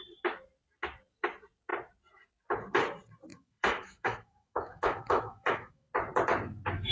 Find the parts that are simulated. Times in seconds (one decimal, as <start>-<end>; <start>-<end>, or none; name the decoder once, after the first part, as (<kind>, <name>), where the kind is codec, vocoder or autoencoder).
3.3-5.9 (autoencoder, DAC-VAE)